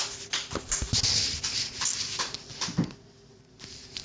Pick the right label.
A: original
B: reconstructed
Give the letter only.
A